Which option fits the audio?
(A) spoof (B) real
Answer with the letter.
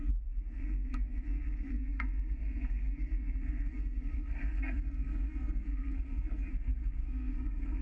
A